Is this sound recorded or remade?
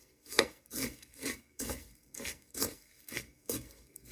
remade